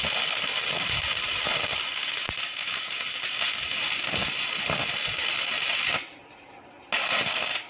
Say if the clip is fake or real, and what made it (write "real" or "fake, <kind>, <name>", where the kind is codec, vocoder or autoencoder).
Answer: real